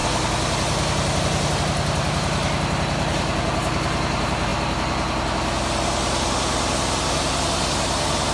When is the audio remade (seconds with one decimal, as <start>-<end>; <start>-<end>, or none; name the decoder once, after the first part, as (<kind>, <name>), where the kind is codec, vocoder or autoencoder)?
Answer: none